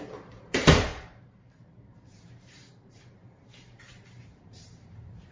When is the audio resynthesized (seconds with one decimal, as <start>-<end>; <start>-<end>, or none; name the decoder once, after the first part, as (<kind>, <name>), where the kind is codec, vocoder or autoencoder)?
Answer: 0.0-5.3 (vocoder, BigVGAN v2)